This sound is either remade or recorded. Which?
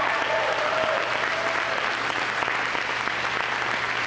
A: recorded